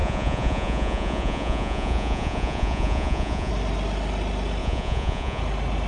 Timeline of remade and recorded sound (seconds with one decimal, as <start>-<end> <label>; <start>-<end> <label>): 0.0-3.5 remade; 3.5-4.6 recorded; 4.6-5.4 remade; 5.4-5.9 recorded